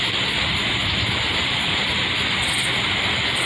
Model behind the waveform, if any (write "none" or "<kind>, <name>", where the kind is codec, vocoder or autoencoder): none